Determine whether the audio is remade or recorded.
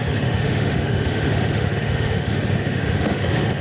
remade